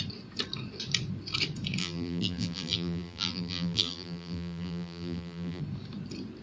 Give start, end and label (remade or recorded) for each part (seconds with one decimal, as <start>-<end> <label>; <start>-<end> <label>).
0.0-1.8 recorded; 1.8-5.6 remade; 5.6-6.4 recorded